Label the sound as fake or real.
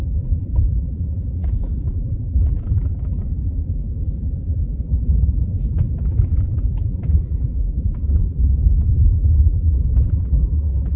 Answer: fake